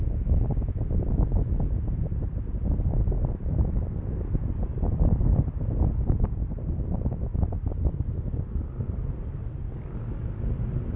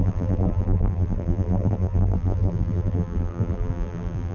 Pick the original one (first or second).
first